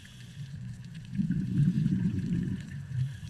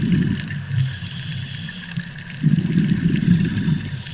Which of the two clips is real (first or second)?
second